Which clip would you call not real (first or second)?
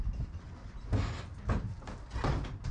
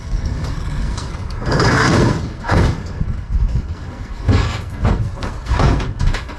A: second